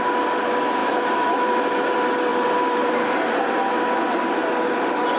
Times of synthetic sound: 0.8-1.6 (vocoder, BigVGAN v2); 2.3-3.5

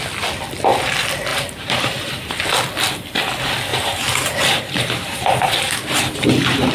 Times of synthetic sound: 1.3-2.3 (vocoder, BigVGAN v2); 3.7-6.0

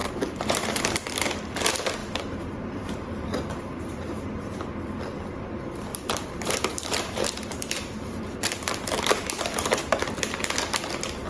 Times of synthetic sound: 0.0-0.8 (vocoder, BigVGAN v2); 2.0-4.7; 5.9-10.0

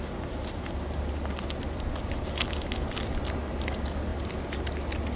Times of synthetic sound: none